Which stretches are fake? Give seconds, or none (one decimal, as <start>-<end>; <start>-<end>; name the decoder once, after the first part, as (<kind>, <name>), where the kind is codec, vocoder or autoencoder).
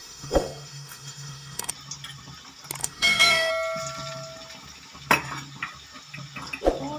0.0-1.7 (autoencoder, DAC-VAE); 2.8-3.5